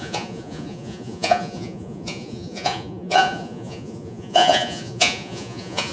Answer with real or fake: fake